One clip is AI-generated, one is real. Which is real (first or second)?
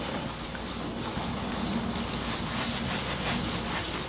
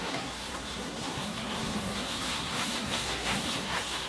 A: first